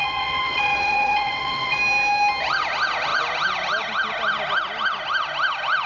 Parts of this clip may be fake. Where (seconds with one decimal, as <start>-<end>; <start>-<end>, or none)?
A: 0.0-1.8